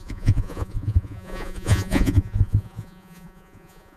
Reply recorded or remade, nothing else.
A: remade